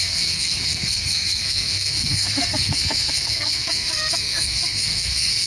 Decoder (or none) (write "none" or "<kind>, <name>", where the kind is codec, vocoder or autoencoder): codec, SNAC